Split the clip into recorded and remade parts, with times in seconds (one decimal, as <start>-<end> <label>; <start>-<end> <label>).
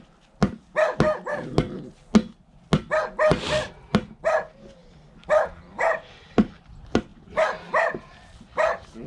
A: 0.0-9.1 recorded